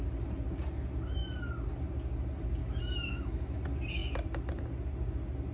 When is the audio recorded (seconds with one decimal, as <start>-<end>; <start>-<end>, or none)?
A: 0.0-2.6; 3.6-5.5